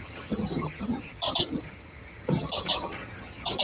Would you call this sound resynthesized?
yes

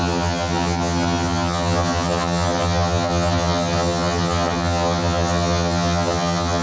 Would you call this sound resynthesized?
yes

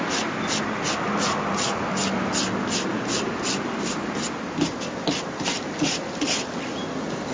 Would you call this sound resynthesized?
no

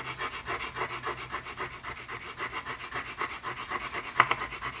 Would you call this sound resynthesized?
no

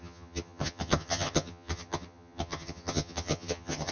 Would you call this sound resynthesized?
yes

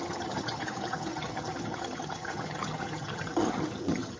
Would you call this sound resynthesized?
yes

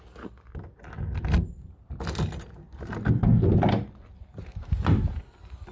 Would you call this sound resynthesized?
no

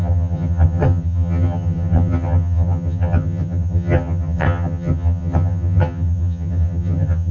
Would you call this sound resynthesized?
yes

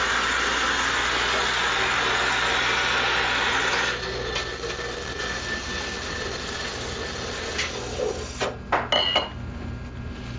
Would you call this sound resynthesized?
no